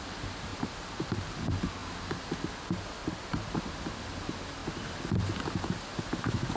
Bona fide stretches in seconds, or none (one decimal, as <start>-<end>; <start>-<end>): 0.0-3.0; 3.6-6.6